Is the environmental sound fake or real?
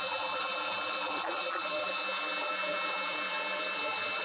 fake